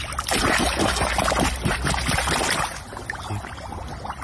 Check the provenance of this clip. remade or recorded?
recorded